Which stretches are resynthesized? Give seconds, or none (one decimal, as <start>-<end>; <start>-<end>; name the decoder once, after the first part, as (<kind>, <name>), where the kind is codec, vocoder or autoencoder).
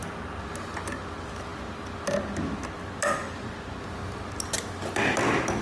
none